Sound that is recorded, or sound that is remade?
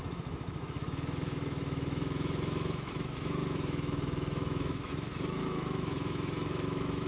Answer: remade